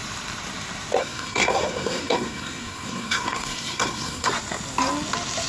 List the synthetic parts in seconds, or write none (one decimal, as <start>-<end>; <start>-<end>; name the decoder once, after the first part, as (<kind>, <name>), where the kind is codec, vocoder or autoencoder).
1.0-4.3 (codec, SNAC)